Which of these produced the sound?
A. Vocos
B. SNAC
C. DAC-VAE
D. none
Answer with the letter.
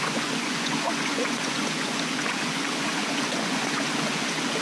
A